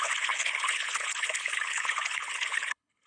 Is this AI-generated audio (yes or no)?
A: yes